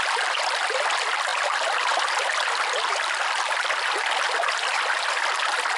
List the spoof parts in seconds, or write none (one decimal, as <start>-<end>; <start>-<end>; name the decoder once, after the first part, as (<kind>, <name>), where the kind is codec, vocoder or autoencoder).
none